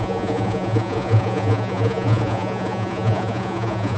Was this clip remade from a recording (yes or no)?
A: yes